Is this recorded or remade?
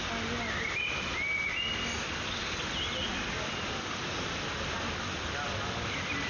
recorded